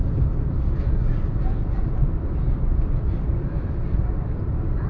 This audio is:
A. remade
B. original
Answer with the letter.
B